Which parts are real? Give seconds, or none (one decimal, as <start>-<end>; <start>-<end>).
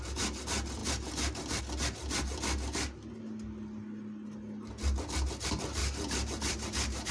0.0-5.8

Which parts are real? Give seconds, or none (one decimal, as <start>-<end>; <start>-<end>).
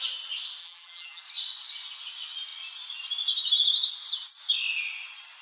0.0-0.6; 1.2-5.4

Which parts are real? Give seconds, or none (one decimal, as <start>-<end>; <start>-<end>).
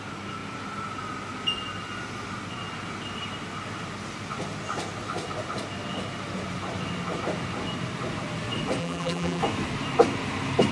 0.0-8.8; 9.4-10.7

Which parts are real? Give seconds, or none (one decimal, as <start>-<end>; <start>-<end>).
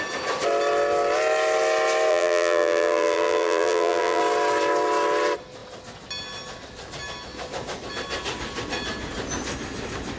0.0-2.1; 4.2-10.2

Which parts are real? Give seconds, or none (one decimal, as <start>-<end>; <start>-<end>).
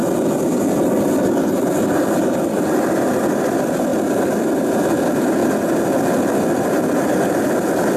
5.4-6.2